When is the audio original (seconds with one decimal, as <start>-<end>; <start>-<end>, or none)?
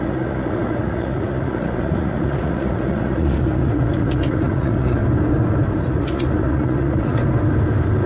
5.0-5.7; 7.2-8.1